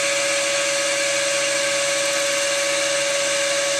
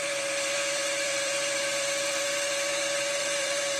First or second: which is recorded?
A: first